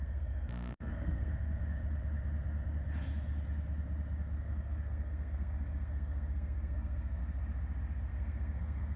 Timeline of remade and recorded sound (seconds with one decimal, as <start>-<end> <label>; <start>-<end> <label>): 0.0-1.8 remade; 1.8-4.4 recorded; 4.4-7.2 remade; 7.2-8.1 recorded; 8.1-9.0 remade